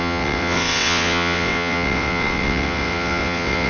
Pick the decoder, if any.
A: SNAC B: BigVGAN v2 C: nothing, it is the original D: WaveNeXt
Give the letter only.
D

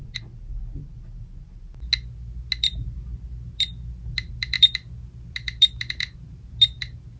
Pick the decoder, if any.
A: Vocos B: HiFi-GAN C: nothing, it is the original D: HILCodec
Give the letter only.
C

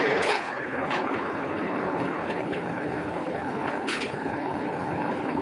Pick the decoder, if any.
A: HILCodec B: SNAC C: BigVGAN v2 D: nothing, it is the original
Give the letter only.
A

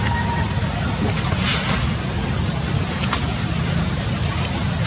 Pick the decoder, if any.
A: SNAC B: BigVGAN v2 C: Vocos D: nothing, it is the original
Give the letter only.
B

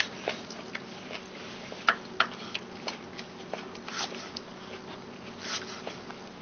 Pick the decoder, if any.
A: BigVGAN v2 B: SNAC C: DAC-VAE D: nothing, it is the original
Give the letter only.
D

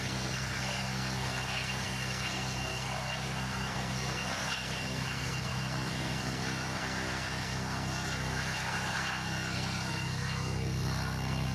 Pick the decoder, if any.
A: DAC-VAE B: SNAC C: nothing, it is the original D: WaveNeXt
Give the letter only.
B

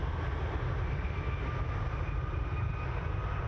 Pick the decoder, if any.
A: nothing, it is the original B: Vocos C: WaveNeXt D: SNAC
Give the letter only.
A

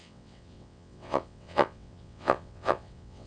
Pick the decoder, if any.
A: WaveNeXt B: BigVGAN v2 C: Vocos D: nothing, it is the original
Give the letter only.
A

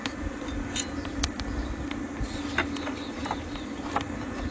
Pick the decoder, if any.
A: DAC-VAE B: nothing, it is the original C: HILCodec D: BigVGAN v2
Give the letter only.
B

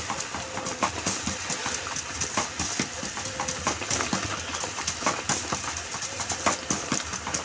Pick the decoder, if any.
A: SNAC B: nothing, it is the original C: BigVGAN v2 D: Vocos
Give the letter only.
B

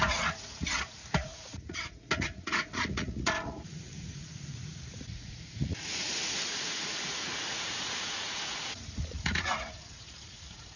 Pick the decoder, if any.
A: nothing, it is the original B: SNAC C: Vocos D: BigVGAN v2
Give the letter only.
C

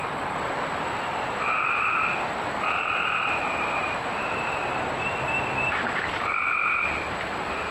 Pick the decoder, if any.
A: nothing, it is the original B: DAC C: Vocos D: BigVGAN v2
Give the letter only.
D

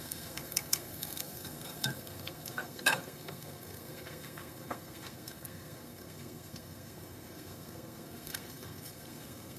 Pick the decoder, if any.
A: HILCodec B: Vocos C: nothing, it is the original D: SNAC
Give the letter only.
D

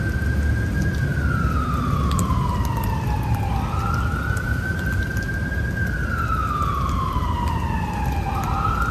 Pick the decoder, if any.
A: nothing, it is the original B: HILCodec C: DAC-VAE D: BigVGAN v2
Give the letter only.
A